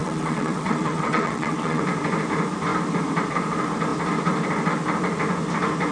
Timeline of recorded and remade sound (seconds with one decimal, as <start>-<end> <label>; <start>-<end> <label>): 0.0-1.8 remade; 1.8-5.9 recorded